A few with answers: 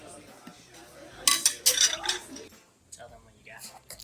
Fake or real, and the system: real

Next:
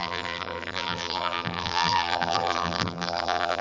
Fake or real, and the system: fake, vocoder, BigVGAN v2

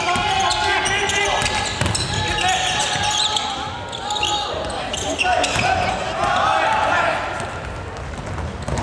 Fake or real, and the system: real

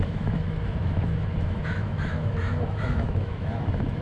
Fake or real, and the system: fake, autoencoder, DAC-VAE